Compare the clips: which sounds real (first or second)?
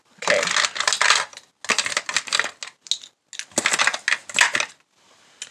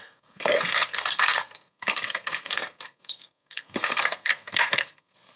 first